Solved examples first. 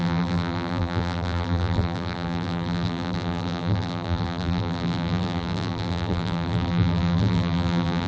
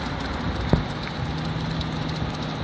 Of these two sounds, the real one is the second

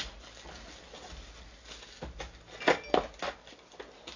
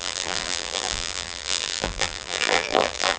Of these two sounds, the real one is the first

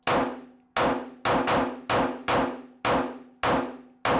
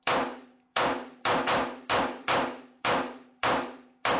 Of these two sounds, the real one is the first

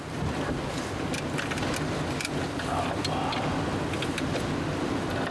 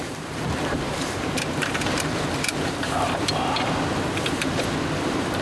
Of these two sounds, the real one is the first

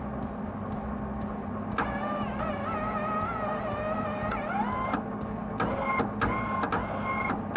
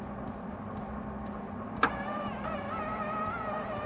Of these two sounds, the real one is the first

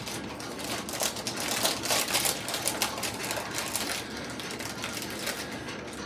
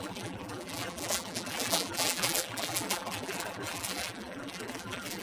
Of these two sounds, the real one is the first